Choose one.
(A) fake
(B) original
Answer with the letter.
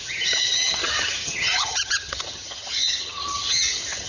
A